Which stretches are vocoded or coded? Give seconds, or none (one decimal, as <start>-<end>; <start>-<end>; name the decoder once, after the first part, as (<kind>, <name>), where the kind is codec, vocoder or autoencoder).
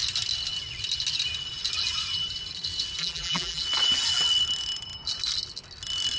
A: 3.0-3.6 (vocoder, BigVGAN v2)